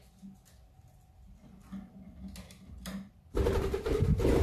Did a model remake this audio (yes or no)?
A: no